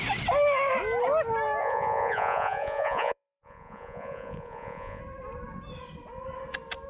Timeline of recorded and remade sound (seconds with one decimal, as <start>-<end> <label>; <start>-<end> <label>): 0.0-1.6 recorded; 1.6-5.0 remade; 5.0-6.9 recorded